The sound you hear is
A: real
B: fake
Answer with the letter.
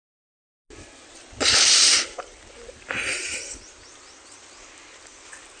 A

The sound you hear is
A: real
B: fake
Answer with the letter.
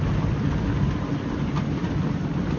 A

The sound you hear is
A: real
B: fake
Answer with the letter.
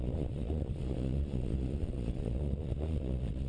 B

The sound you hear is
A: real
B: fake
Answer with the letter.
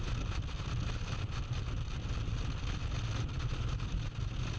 A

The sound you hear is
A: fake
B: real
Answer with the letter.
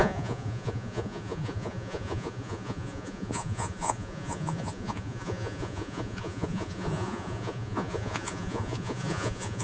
A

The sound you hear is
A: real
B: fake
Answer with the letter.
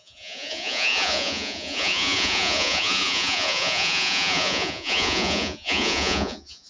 B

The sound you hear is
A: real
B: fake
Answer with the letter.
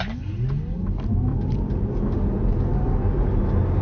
A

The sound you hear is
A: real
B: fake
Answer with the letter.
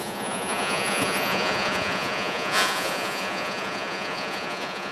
B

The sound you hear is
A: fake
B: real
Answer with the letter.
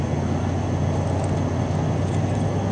B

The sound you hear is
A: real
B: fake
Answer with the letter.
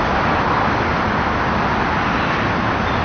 A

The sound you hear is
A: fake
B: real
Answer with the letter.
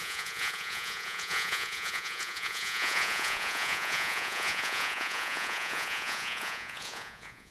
A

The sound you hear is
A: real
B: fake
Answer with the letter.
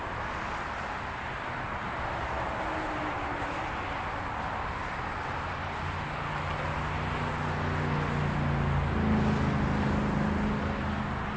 A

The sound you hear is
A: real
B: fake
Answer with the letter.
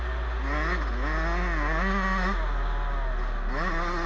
A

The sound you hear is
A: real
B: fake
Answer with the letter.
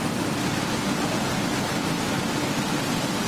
A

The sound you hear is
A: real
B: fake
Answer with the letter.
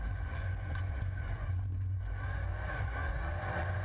B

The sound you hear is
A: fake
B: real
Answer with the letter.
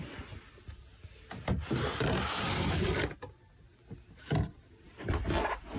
B